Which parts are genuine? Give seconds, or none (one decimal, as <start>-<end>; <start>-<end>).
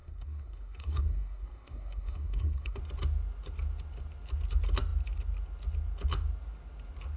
2.8-7.2